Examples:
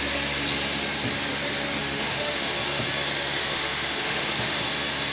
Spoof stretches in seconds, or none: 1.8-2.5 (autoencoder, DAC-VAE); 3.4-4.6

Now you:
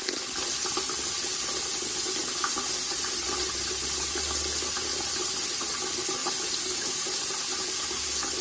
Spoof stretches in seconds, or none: 2.2-4.3 (vocoder, BigVGAN v2); 4.9-5.7; 6.2-7.8